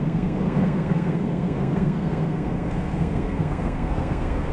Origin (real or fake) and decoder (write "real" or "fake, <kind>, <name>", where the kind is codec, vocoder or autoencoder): fake, codec, SNAC